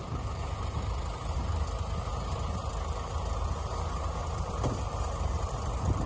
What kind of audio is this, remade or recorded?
recorded